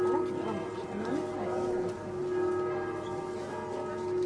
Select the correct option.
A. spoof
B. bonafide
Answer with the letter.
B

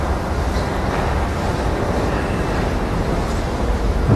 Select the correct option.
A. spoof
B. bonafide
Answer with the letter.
B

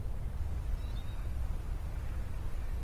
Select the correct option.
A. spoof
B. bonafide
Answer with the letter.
B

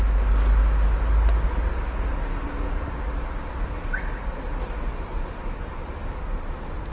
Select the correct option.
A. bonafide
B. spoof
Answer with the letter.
A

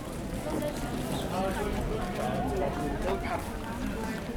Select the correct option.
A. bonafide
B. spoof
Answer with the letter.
A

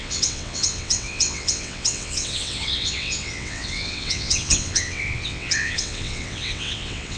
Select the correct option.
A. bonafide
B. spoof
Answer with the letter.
B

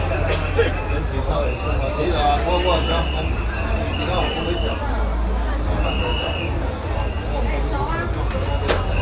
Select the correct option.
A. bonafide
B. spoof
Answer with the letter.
A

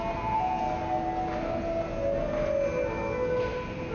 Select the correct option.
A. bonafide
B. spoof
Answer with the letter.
A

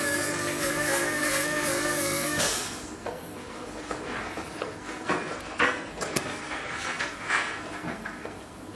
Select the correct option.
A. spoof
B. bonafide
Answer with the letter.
A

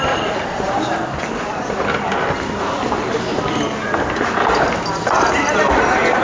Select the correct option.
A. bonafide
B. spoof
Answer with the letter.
A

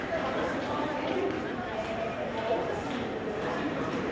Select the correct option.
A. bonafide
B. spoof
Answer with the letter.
B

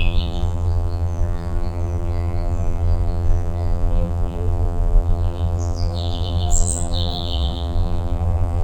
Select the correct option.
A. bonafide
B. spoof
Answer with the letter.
B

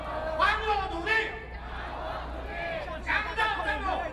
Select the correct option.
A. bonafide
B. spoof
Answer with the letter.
A